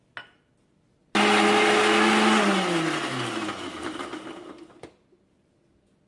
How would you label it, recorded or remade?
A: recorded